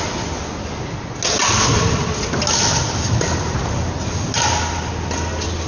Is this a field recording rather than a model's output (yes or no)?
yes